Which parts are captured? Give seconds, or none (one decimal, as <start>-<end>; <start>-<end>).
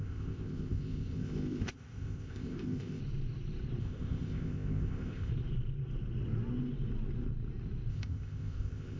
3.0-3.8; 5.3-7.9